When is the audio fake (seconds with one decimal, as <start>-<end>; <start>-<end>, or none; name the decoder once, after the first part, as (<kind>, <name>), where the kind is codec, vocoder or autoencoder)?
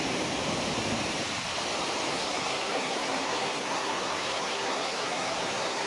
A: 2.1-5.9 (codec, SNAC)